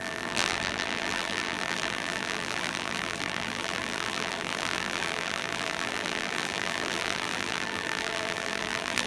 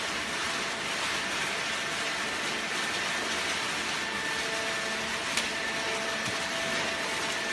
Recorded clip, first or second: second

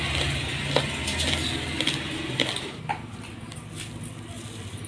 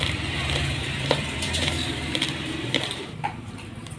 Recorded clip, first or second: first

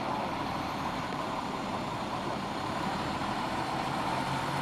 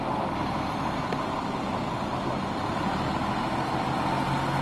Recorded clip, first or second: second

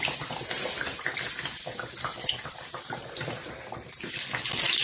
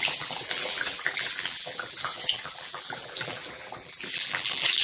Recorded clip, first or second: first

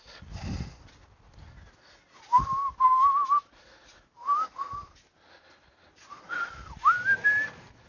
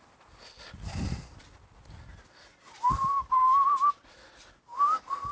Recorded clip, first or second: first